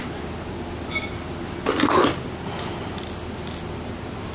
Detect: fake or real real